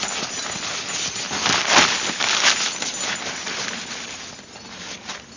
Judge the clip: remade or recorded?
recorded